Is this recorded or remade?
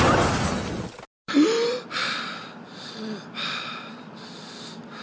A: recorded